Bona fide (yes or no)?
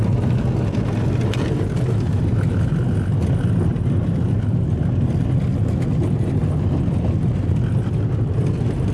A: yes